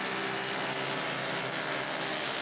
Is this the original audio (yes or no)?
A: yes